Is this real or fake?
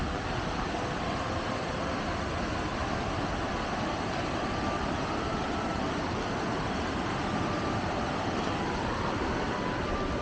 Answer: real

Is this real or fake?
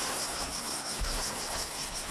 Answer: fake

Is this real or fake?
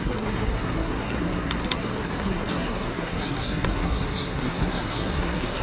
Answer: fake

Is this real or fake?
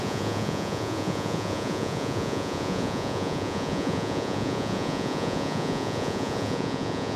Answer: fake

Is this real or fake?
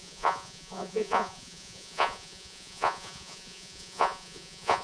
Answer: fake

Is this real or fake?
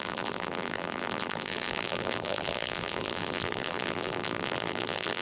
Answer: fake